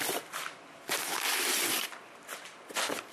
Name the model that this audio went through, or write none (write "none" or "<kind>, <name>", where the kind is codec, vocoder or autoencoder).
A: none